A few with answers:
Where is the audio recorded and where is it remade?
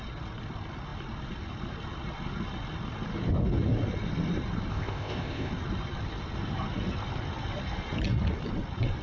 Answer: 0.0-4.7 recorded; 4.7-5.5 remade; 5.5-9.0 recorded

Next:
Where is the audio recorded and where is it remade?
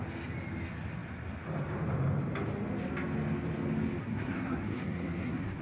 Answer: 0.0-4.0 recorded; 4.0-5.6 remade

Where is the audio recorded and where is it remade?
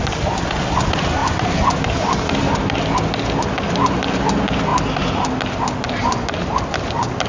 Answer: 0.0-7.3 recorded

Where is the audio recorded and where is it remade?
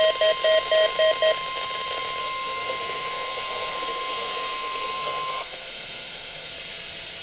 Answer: 0.0-2.2 recorded; 2.2-6.5 remade; 6.5-7.2 recorded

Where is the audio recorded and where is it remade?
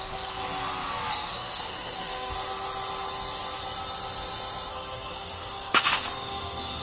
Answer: 0.0-0.4 remade; 0.4-1.1 recorded; 1.1-2.3 remade; 2.3-4.7 recorded; 4.7-6.8 remade